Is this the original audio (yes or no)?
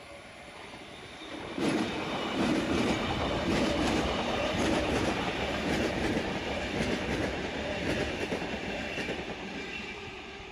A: no